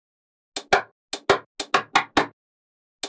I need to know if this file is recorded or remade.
recorded